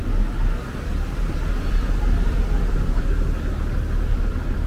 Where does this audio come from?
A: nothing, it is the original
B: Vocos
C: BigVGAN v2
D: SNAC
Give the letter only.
A